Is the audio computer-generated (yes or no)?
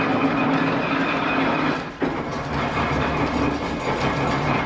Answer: no